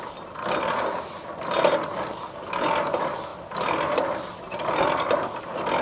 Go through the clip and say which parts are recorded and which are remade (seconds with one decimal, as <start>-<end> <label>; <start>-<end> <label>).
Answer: 0.0-5.8 recorded